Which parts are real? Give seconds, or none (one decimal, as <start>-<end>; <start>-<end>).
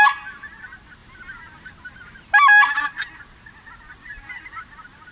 0.0-5.1